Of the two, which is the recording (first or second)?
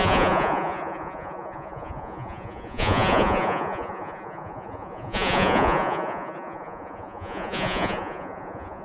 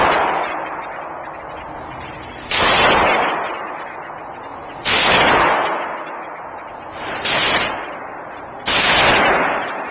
second